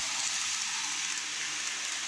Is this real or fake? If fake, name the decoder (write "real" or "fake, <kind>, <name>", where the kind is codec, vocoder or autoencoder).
real